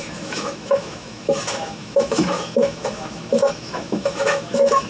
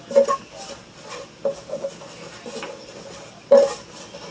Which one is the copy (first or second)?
first